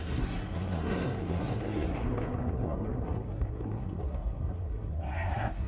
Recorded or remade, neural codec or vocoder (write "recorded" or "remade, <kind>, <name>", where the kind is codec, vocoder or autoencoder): remade, codec, SNAC